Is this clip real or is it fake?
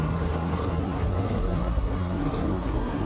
fake